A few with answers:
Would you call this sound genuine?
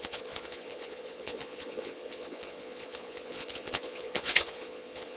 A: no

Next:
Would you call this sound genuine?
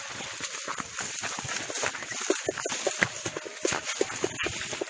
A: yes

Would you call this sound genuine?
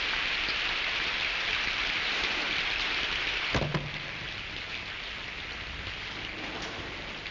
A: yes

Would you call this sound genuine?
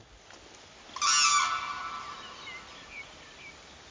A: yes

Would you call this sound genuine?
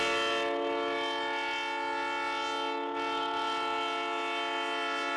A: yes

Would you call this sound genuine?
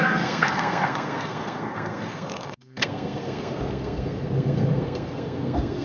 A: no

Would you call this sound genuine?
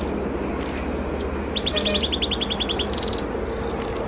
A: yes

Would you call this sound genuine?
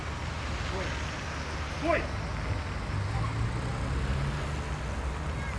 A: yes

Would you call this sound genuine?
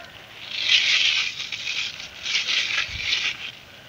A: yes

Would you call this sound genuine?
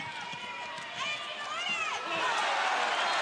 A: yes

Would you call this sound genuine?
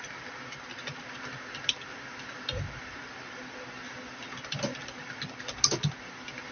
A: yes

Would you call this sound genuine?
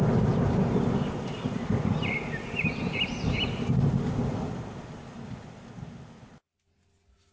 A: yes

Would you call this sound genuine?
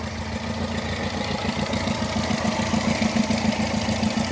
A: yes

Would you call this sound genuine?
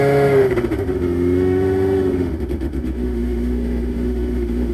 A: no